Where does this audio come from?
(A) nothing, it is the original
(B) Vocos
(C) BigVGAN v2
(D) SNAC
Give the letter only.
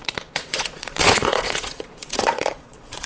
B